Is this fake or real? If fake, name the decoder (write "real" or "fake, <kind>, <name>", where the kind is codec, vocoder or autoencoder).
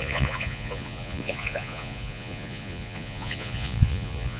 fake, vocoder, Vocos